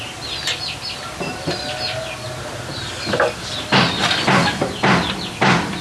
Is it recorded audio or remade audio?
recorded